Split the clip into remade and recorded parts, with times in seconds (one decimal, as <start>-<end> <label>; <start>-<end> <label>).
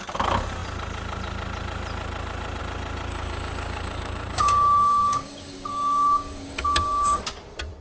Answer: 0.0-3.1 recorded; 3.1-7.2 remade; 7.2-7.8 recorded